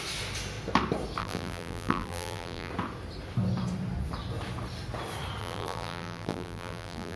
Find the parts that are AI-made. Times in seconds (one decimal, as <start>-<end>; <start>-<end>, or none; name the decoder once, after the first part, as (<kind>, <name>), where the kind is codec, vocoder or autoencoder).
1.2-2.7 (vocoder, BigVGAN v2); 5.4-7.2